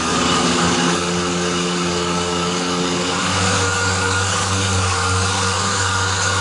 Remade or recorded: remade